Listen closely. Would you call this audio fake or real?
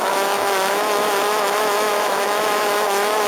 fake